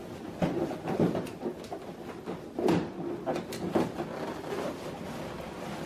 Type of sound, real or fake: real